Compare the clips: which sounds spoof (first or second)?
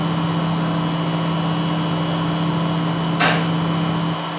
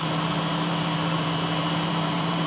second